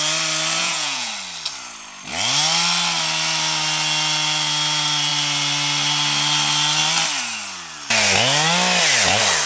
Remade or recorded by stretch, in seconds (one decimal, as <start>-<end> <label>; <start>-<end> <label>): 0.0-0.6 recorded; 0.6-1.1 remade; 1.1-9.5 recorded